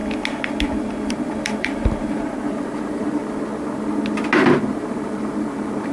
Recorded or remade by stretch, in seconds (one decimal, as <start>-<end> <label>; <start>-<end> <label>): 0.0-1.1 recorded; 1.1-3.2 remade; 3.2-4.7 recorded; 4.7-5.9 remade